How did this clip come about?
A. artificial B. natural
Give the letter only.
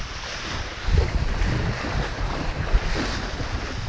B